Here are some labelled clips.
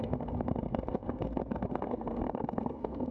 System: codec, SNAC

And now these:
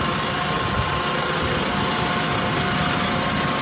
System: none